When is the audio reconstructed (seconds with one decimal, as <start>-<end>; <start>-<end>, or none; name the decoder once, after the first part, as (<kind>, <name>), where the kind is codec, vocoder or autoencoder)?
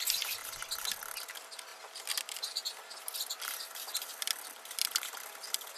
none